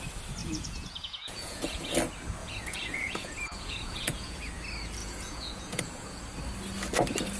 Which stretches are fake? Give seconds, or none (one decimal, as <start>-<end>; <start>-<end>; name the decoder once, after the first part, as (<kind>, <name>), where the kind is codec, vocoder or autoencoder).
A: 0.4-2.0 (vocoder, Vocos); 2.4-4.4; 5.0-6.2